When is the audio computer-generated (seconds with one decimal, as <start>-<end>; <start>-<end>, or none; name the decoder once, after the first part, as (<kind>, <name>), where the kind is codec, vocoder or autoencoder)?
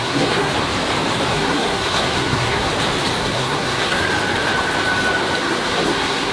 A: 0.0-0.5 (codec, SNAC); 1.3-2.7; 3.2-4.0; 5.4-6.3